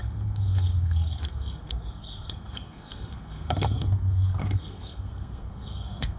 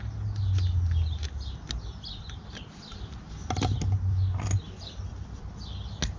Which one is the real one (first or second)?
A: second